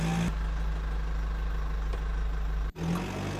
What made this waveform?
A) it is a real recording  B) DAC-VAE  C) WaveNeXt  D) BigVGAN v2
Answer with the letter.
A